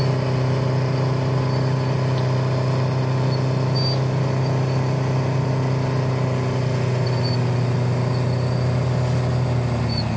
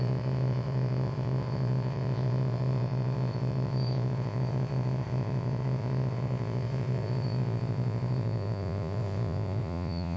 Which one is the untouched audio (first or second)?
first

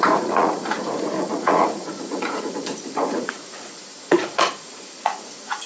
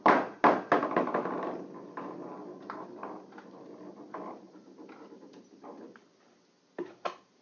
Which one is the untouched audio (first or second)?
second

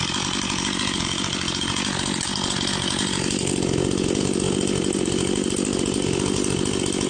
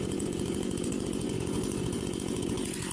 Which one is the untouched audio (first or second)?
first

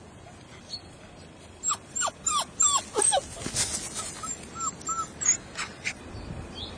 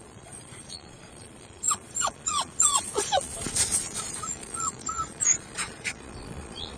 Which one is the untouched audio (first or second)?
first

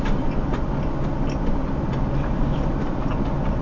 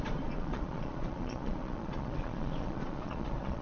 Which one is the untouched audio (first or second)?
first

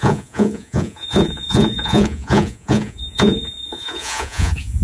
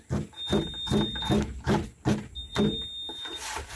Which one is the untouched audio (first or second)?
second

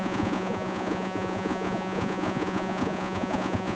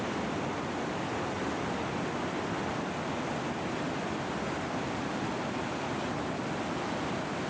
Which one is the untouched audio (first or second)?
second